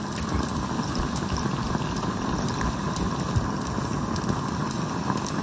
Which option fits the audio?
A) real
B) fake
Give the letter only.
A